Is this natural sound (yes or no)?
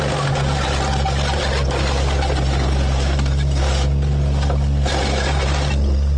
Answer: yes